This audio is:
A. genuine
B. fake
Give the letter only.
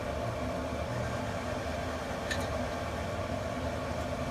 A